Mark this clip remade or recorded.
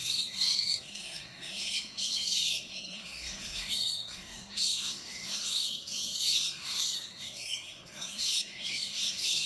remade